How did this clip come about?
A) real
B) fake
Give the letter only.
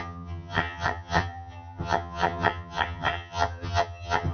B